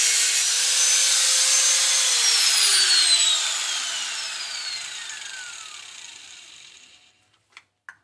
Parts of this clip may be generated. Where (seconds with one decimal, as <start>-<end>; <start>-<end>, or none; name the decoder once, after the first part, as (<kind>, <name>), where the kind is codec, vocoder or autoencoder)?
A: 0.0-1.4 (vocoder, BigVGAN v2); 3.2-7.2